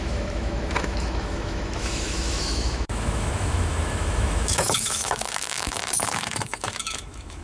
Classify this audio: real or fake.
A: fake